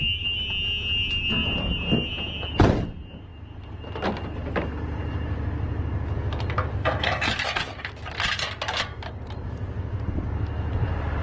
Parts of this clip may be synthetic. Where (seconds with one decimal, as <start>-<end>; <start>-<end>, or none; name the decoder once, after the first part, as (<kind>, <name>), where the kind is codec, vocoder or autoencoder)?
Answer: 6.8-7.3 (codec, SNAC)